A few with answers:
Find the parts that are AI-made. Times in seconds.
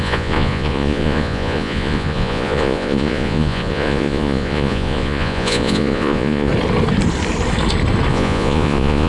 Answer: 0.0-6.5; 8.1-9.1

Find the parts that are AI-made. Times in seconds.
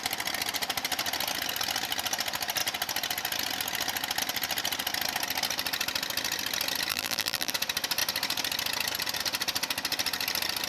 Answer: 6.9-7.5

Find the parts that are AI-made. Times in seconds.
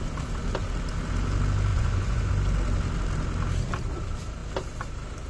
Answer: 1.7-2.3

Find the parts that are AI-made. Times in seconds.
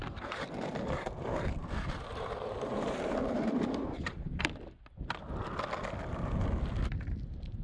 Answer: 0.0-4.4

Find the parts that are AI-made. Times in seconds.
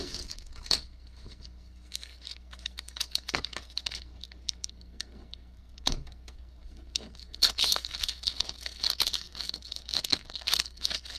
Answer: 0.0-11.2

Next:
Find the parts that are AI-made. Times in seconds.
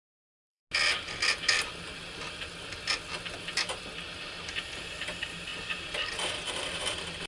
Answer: 0.0-0.6; 4.3-7.3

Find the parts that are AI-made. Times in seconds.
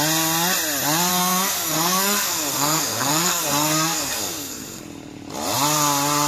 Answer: 1.1-4.8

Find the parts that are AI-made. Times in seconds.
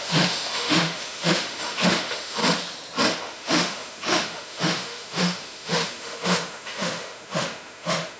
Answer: 0.0-2.4; 3.2-8.2